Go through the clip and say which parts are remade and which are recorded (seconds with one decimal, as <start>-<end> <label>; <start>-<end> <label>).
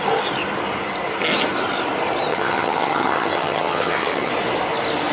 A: 0.0-2.3 recorded; 2.3-4.3 remade; 4.3-5.1 recorded